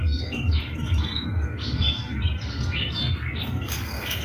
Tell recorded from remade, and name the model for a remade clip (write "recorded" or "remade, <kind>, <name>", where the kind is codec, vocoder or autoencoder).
remade, codec, SNAC